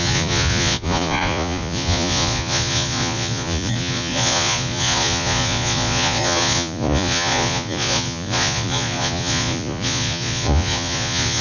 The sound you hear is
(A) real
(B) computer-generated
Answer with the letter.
B